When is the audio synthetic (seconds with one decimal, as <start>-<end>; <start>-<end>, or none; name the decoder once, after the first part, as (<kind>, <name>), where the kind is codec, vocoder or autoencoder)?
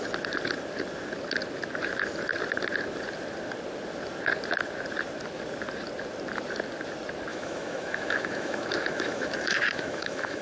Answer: 7.3-10.4 (autoencoder, DAC-VAE)